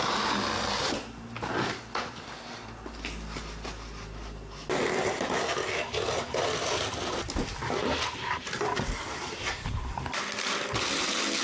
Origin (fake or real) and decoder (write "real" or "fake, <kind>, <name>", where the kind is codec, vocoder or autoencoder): real